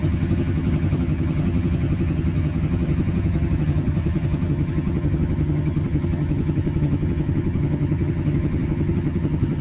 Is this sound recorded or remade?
remade